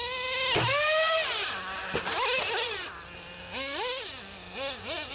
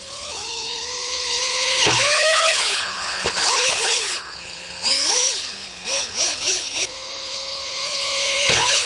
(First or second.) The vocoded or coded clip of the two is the second